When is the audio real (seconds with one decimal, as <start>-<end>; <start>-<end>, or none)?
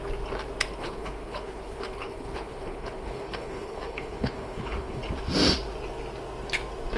0.0-0.8; 5.0-7.0